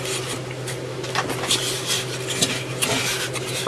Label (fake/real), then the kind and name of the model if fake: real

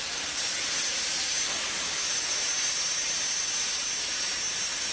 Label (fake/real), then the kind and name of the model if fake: real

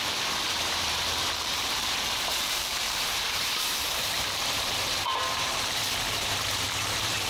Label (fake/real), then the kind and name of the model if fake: fake, vocoder, BigVGAN v2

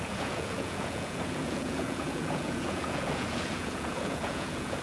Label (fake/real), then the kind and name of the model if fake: fake, vocoder, Vocos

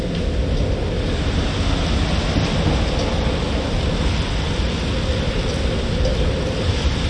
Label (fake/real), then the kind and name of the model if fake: real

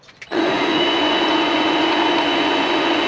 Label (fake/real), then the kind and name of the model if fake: fake, vocoder, Vocos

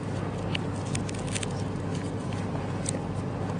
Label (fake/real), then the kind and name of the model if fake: real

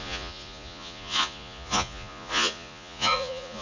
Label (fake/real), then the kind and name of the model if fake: fake, vocoder, Vocos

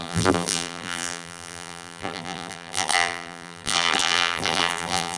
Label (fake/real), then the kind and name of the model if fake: fake, vocoder, BigVGAN v2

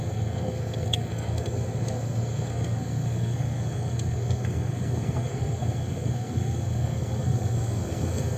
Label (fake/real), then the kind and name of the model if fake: fake, codec, SNAC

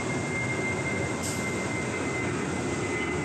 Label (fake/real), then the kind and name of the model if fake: real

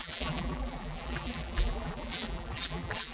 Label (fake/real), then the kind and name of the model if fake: fake, vocoder, BigVGAN v2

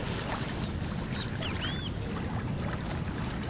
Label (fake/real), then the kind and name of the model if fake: real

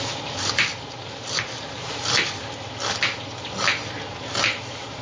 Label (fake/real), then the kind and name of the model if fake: real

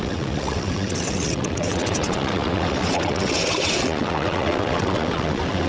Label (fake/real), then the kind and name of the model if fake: fake, vocoder, WaveNeXt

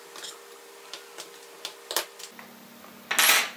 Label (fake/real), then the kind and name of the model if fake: real